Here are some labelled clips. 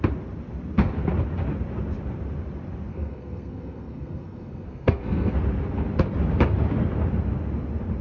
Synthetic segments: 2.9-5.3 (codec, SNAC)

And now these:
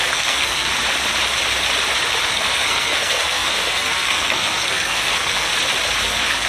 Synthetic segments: 0.0-0.7 (codec, SNAC); 2.3-5.5; 6.0-6.5

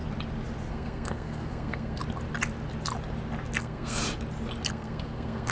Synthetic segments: 0.7-2.0 (codec, SNAC); 3.6-4.0; 4.7-5.5